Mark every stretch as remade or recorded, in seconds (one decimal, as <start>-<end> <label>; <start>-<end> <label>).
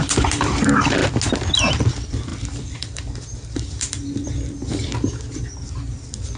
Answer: 0.0-1.0 remade; 1.0-1.7 recorded; 1.7-4.9 remade; 4.9-5.4 recorded; 5.4-6.4 remade